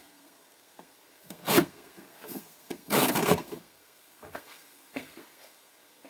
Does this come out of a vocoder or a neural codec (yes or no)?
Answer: yes